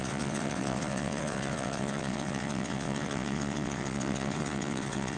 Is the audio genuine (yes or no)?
no